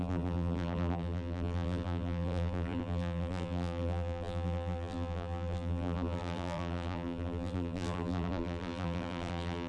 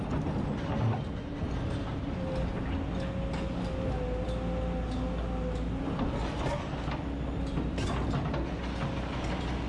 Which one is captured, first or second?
second